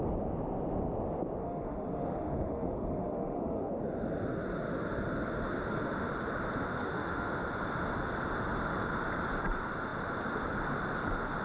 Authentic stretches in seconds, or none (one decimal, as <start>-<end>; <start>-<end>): 0.0-1.4; 3.7-6.8; 7.3-11.4